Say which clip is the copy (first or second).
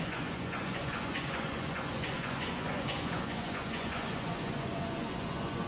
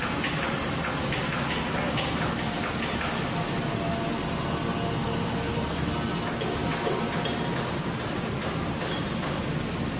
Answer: first